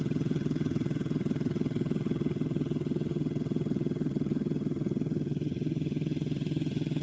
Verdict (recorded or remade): remade